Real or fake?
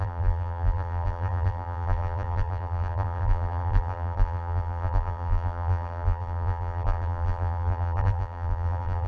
fake